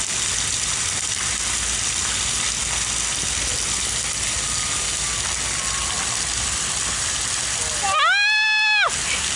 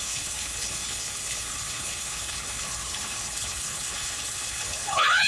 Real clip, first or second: first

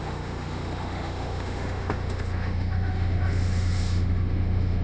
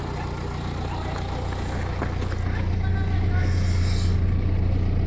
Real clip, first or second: second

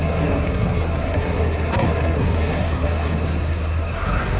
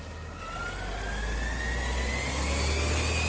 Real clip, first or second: second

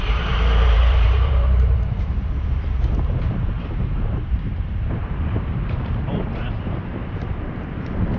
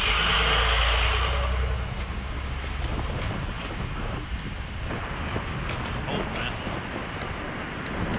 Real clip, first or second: second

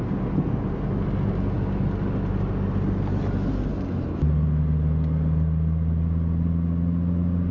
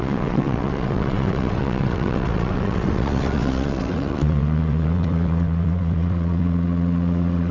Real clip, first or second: first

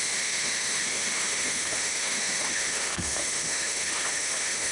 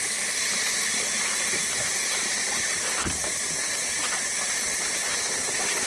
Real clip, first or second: second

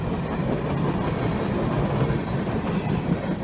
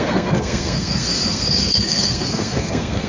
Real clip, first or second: first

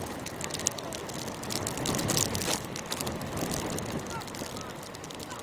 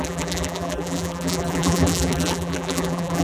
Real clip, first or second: first